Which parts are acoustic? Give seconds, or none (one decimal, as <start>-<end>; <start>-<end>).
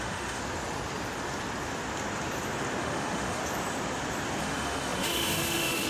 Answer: 0.4-2.8; 3.4-4.4